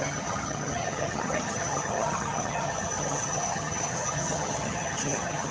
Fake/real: fake